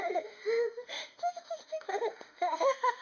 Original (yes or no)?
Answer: no